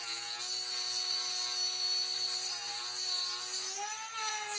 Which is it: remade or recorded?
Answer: recorded